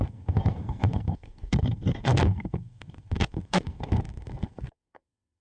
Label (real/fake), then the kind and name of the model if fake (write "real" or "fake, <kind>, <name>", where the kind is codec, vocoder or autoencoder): fake, codec, SNAC